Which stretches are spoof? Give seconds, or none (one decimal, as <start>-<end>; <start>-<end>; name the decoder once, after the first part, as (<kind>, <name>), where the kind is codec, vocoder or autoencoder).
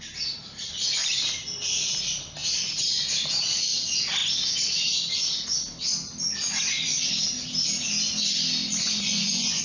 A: 8.6-9.6 (vocoder, Vocos)